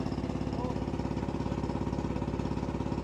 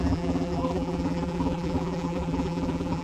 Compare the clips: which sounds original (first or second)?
first